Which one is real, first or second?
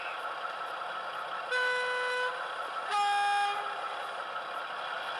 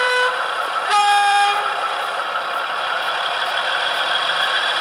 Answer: first